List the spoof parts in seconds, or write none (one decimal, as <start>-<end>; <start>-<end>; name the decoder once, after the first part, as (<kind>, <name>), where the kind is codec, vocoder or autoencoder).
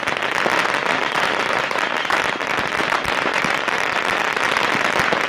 1.0-4.2 (vocoder, BigVGAN v2)